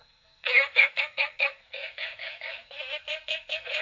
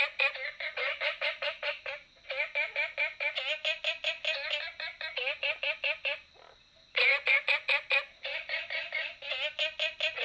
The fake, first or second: first